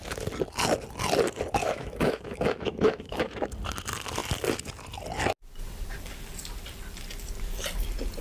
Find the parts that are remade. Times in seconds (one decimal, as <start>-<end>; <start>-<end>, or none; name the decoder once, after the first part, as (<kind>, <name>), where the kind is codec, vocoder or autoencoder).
1.6-3.5 (autoencoder, DAC-VAE)

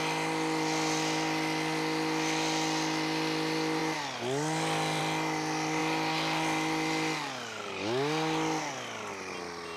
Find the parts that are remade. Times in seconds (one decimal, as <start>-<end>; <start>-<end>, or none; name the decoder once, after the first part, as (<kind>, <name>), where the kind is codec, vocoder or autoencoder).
none